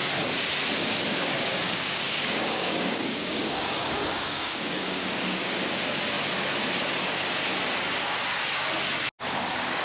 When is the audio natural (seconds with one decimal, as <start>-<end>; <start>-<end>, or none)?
0.0-1.1; 5.6-9.2